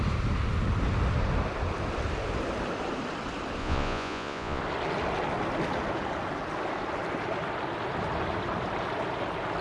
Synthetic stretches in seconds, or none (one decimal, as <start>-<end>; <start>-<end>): 3.6-4.6